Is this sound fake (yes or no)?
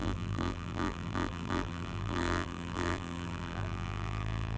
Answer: yes